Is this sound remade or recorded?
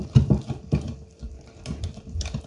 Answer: remade